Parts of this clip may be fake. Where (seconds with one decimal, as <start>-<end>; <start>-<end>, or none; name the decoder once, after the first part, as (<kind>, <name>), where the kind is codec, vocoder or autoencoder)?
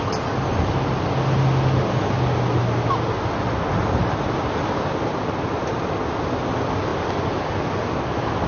none